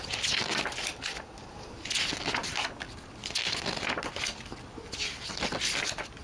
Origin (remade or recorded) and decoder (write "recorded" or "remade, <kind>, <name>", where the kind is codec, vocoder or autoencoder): recorded